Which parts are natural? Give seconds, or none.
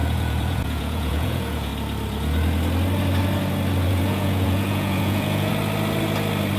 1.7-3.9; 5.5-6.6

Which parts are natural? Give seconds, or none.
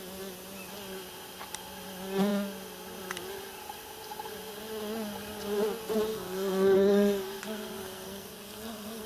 0.0-6.1